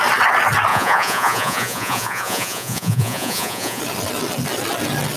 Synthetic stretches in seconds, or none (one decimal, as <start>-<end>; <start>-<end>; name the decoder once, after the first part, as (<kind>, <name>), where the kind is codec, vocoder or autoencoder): 0.7-3.8 (vocoder, Vocos)